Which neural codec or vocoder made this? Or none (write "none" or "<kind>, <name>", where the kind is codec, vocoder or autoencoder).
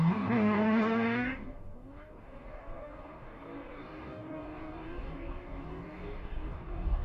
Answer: codec, DAC